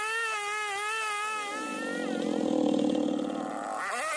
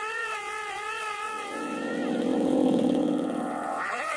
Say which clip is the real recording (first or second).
first